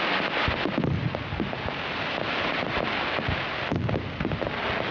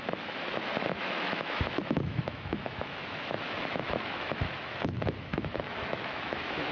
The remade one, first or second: second